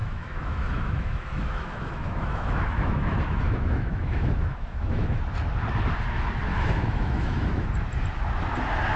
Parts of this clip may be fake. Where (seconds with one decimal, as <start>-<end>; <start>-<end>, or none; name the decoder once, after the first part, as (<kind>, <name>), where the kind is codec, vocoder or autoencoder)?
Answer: 0.0-5.2 (autoencoder, DAC-VAE); 6.5-7.7